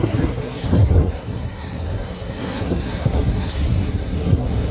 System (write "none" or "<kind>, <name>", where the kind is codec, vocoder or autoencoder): codec, SNAC